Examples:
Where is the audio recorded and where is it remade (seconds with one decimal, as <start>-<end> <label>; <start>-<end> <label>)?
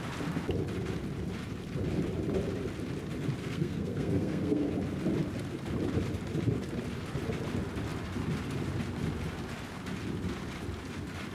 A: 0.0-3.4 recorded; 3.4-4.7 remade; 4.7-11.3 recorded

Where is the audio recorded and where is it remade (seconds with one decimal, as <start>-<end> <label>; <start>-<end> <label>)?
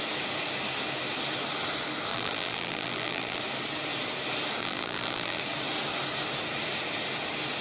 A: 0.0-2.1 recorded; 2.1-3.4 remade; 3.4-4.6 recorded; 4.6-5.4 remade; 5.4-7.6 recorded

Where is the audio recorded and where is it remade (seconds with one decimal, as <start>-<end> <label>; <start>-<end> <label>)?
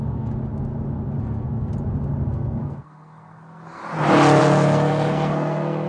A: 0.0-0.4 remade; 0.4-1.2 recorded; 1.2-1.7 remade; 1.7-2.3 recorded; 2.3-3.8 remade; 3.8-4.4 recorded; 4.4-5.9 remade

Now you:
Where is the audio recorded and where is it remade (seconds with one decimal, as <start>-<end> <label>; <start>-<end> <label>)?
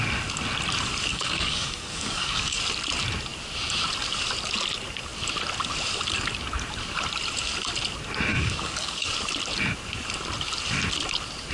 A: 0.0-1.1 recorded; 1.1-2.6 remade; 2.6-8.3 recorded; 8.3-9.1 remade; 9.1-11.5 recorded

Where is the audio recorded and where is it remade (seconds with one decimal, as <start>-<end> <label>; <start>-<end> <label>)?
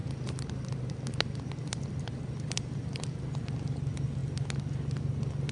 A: 0.0-3.3 remade; 3.3-5.5 recorded